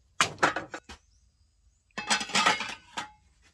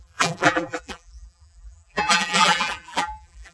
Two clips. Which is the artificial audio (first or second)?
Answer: second